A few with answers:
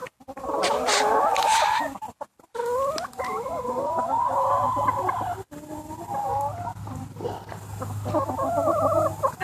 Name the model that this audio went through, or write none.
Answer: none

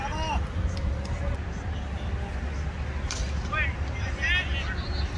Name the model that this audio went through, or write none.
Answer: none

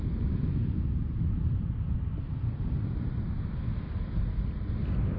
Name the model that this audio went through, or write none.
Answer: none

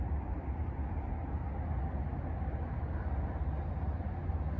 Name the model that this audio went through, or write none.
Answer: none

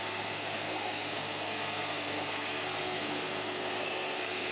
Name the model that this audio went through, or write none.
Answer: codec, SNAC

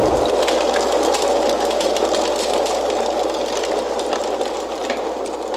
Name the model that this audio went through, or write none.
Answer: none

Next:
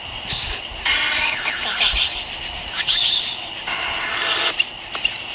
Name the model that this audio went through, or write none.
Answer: none